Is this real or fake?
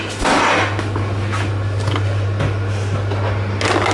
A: real